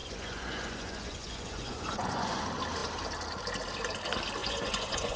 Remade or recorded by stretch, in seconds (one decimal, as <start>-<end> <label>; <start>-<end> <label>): 0.0-2.4 remade; 2.4-4.4 recorded; 4.4-5.2 remade

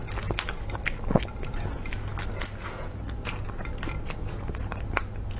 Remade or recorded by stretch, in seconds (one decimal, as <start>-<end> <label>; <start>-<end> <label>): 0.0-5.4 recorded

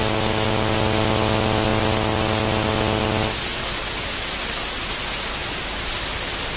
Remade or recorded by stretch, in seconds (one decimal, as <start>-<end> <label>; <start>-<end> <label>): 0.0-6.6 recorded

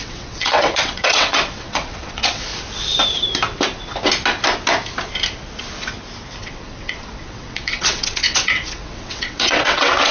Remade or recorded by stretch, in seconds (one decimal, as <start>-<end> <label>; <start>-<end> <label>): 0.0-2.5 remade; 2.5-6.4 recorded; 6.4-10.1 remade

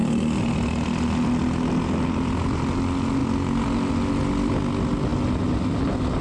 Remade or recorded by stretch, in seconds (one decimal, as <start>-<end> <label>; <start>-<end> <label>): 0.0-6.2 recorded

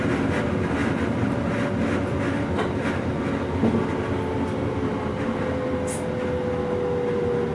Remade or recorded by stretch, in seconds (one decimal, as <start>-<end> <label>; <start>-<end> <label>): 0.0-7.5 recorded

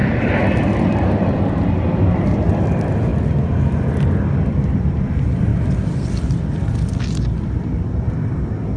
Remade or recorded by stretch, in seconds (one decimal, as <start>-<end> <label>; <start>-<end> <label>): 0.0-3.1 remade; 3.1-4.5 recorded; 4.5-5.5 remade; 5.5-6.2 recorded; 6.2-8.8 remade